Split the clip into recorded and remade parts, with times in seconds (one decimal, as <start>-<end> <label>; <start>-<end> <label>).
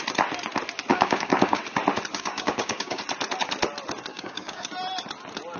0.0-0.9 recorded; 0.9-1.6 remade; 1.6-2.1 recorded; 2.1-3.0 remade; 3.0-4.1 recorded; 4.1-4.7 remade; 4.7-5.6 recorded